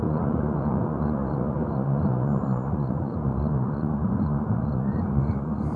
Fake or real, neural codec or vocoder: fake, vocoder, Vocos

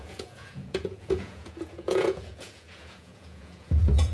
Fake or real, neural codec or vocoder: fake, vocoder, Vocos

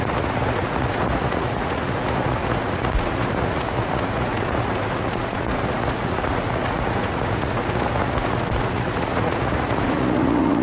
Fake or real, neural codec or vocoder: fake, vocoder, Vocos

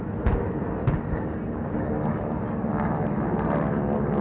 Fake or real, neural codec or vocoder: real